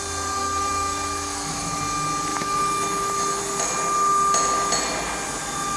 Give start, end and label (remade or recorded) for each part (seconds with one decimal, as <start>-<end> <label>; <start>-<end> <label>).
0.0-0.4 recorded; 0.4-1.8 remade; 1.8-2.3 recorded; 2.3-3.4 remade; 3.4-5.8 recorded